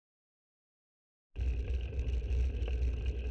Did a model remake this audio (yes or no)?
no